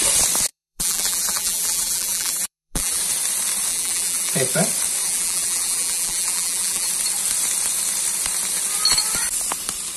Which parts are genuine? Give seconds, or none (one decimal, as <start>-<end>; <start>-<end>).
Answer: 0.0-0.5; 3.0-3.7; 4.3-5.0; 6.9-10.0